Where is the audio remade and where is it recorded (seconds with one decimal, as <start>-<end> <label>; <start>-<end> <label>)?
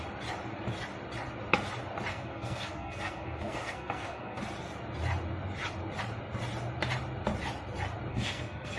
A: 0.0-2.1 recorded; 2.1-4.4 remade; 4.4-8.1 recorded; 8.1-8.8 remade